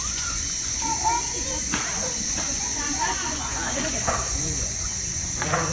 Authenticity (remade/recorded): remade